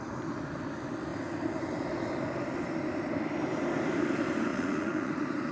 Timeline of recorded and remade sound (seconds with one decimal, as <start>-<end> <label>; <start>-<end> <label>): 0.0-4.5 recorded; 4.5-5.1 remade; 5.1-5.5 recorded